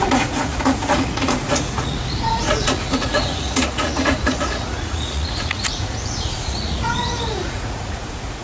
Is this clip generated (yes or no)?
yes